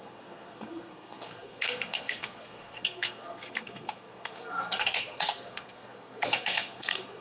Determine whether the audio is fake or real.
fake